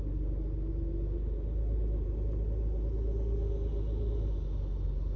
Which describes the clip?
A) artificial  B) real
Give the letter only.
B